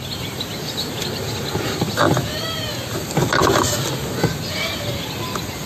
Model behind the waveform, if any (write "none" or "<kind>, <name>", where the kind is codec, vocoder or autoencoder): none